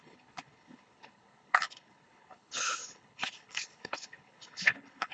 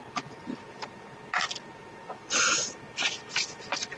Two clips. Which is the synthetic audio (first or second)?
first